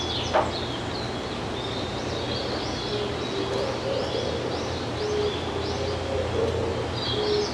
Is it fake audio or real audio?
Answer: real